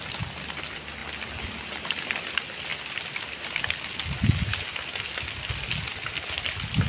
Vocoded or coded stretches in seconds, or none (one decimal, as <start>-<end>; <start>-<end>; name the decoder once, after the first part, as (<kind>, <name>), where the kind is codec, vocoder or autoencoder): none